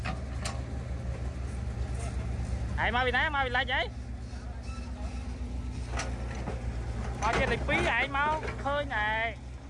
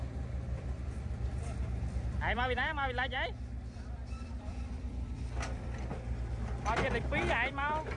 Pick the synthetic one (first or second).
second